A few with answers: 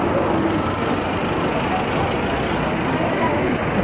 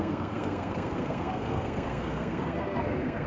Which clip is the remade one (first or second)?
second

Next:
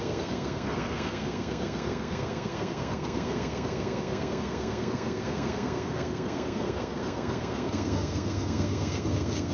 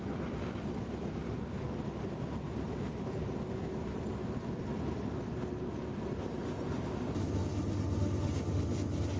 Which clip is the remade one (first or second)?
first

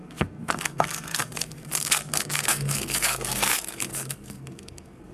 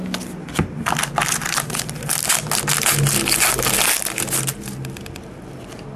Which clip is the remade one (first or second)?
first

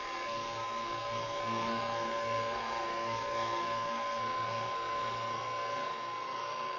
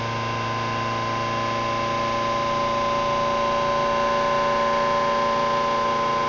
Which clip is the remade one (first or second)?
first